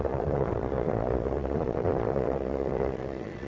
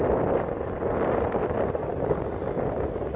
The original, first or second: second